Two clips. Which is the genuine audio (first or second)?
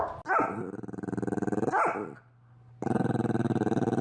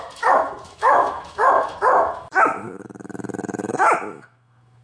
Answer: first